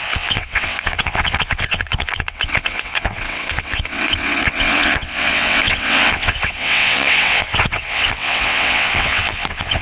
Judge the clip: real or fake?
fake